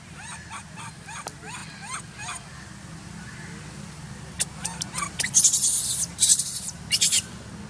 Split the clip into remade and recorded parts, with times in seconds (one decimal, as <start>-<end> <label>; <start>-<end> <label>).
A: 0.0-6.3 recorded; 6.3-6.8 remade; 6.8-7.7 recorded